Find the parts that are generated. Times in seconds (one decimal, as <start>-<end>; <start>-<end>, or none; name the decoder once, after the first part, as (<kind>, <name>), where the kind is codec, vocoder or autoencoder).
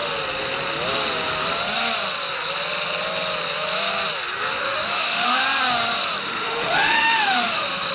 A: 4.6-5.4 (autoencoder, DAC-VAE); 6.2-7.9